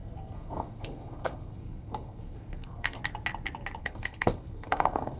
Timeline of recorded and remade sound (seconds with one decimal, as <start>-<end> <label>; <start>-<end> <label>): 0.0-3.0 remade; 3.0-3.8 recorded; 3.8-5.2 remade